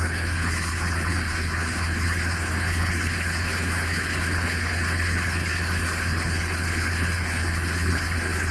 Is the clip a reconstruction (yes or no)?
yes